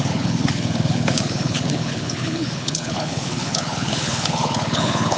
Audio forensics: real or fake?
fake